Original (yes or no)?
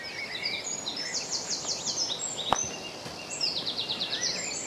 yes